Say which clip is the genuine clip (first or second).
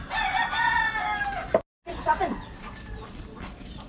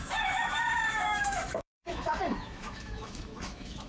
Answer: first